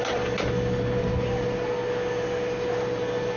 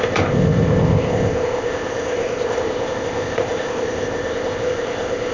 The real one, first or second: first